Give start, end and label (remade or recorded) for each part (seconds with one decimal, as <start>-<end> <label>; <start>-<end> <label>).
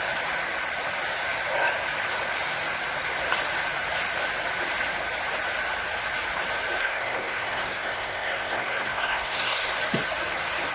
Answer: 0.0-6.8 recorded; 6.8-9.7 remade; 9.7-10.7 recorded